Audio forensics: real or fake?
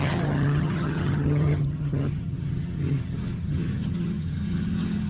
fake